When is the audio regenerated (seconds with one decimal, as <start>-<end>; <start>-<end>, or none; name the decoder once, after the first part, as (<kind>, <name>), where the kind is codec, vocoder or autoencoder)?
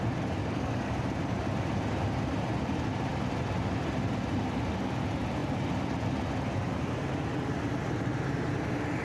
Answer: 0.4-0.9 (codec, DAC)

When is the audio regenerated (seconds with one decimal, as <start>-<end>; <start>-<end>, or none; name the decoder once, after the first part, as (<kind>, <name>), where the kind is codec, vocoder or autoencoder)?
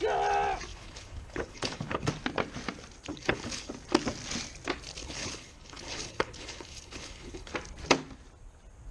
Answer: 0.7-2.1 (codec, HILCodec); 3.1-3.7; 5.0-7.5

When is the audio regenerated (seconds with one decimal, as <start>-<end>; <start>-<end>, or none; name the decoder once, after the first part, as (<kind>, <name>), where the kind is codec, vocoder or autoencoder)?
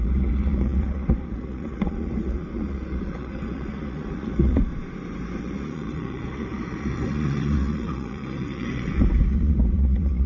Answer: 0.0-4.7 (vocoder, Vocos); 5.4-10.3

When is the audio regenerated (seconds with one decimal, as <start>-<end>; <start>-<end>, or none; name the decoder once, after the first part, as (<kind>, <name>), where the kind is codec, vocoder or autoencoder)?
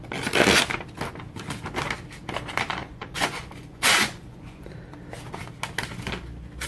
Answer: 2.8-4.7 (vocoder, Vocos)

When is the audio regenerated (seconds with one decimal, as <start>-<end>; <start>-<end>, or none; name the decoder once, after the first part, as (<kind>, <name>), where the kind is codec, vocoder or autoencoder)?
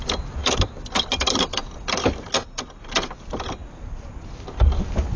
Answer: none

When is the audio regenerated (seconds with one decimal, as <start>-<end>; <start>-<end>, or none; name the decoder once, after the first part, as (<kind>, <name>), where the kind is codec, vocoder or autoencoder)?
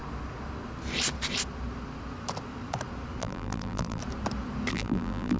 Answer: 3.2-4.0 (vocoder, BigVGAN v2); 4.7-5.4